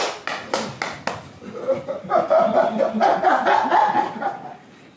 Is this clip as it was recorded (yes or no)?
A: yes